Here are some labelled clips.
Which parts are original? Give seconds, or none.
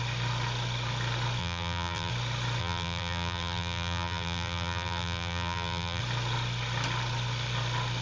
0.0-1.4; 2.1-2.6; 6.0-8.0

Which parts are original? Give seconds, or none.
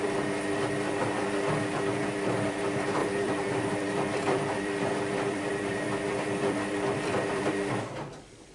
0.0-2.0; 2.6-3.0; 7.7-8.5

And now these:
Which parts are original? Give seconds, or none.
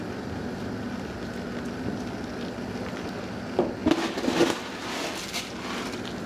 0.0-6.3